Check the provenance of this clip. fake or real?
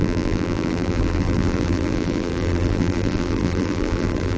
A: fake